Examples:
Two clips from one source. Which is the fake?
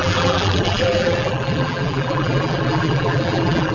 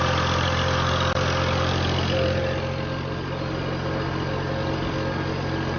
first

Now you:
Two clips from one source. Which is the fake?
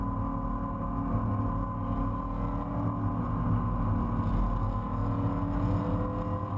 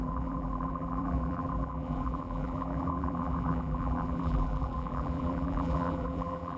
second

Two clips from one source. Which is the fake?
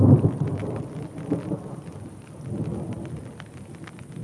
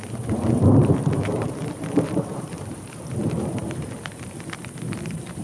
second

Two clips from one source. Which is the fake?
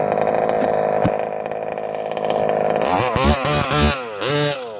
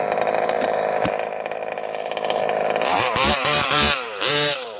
second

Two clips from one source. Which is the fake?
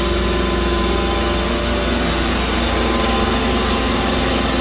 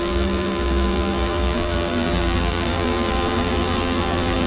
second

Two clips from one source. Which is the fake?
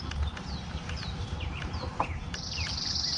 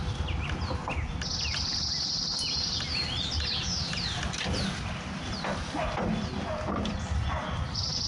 first